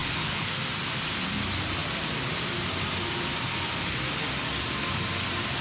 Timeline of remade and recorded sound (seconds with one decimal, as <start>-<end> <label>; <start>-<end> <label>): 0.0-0.5 remade; 0.5-5.6 recorded

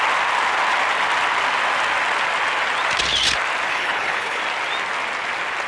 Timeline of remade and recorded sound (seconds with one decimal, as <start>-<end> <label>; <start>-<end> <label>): 0.0-3.7 recorded; 3.7-4.4 remade; 4.4-5.7 recorded

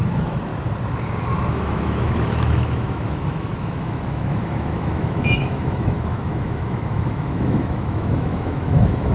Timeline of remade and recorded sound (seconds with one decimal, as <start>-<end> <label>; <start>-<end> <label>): 0.0-0.5 remade; 0.5-1.5 recorded; 1.5-9.1 remade